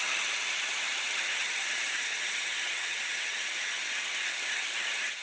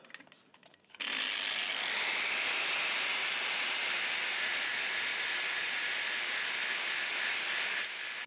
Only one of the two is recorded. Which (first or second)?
second